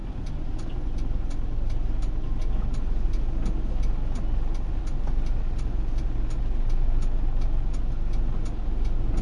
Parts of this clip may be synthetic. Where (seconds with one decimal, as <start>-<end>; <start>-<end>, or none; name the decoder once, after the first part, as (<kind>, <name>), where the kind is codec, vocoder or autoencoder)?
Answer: none